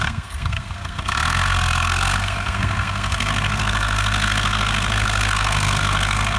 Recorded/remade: remade